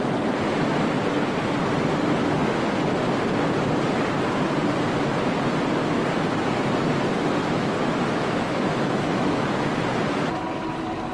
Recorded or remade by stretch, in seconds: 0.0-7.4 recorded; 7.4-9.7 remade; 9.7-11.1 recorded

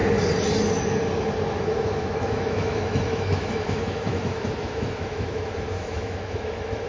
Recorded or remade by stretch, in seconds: 0.0-1.5 recorded; 1.5-6.9 remade

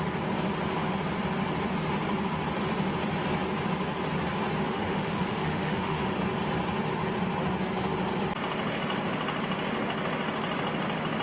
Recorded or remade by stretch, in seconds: 0.0-4.6 recorded; 4.6-6.1 remade; 6.1-11.2 recorded